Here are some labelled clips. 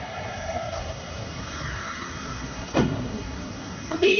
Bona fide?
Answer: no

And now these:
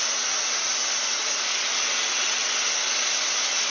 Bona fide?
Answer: yes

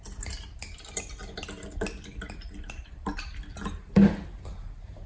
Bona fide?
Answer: yes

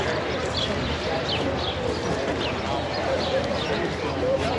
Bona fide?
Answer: yes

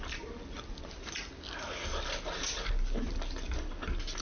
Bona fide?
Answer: yes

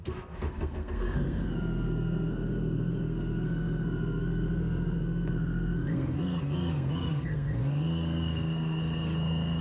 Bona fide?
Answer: no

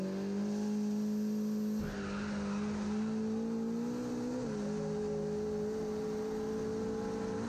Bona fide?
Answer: yes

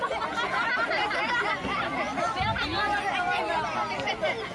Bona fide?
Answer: yes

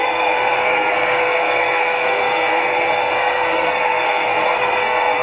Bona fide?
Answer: no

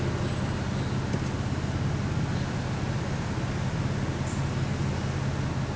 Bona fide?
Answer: yes